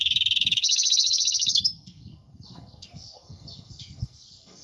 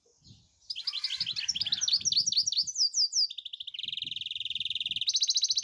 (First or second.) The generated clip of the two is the first